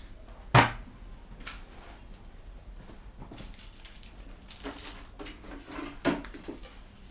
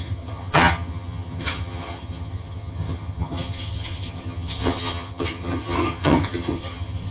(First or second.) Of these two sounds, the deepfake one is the second